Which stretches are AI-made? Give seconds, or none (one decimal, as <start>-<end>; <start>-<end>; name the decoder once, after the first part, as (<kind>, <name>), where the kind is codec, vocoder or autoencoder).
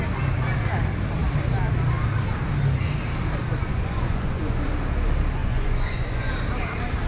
3.7-4.6 (vocoder, Vocos); 5.4-6.3